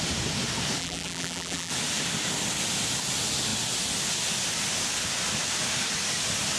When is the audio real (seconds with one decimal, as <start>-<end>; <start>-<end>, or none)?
0.0-0.8; 1.7-6.6